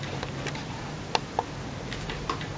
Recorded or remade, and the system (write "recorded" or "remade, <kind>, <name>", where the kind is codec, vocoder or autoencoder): recorded